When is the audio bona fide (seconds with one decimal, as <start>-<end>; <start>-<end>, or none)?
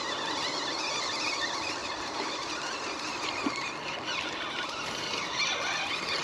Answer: 0.0-6.2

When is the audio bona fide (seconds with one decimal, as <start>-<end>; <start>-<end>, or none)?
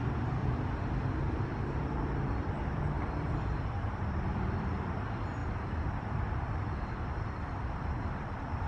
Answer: 0.0-0.4; 5.0-5.4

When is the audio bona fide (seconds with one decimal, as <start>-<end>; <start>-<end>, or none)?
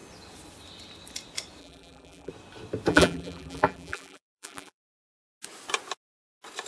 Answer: 0.0-1.6; 2.3-2.9; 4.9-6.7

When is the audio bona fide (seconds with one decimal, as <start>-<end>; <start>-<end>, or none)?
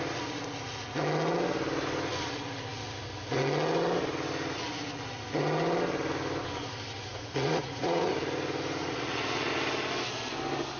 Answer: 0.0-7.1; 8.1-8.8; 9.5-10.8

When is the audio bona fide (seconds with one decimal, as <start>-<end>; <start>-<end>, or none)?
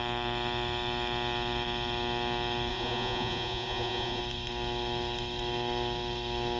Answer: 0.0-2.7; 4.2-6.6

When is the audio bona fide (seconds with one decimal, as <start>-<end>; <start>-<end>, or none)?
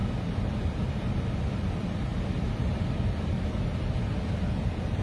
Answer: 0.0-5.0